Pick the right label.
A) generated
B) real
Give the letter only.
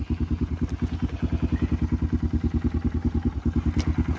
B